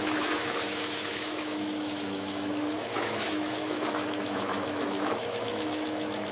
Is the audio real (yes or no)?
no